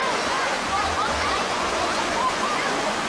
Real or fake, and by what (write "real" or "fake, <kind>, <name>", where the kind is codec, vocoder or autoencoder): fake, vocoder, Vocos